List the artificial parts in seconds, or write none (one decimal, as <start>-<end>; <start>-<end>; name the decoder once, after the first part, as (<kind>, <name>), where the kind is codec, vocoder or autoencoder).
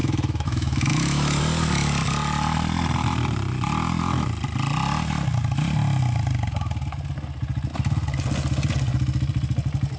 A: 0.0-1.4 (autoencoder, DAC-VAE)